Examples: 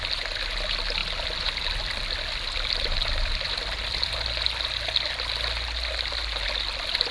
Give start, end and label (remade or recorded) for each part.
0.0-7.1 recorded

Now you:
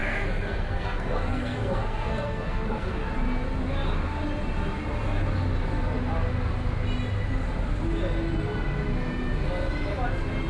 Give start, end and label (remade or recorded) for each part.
0.0-3.0 remade; 3.0-10.5 recorded